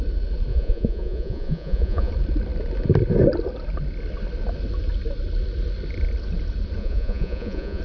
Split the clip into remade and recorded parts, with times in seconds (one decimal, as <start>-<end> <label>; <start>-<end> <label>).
0.0-0.5 recorded; 0.5-2.1 remade; 2.1-6.8 recorded; 6.8-7.8 remade